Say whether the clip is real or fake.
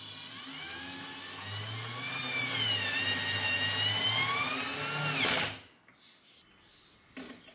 real